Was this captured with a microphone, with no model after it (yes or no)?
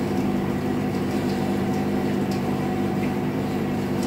no